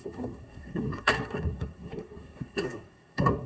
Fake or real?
fake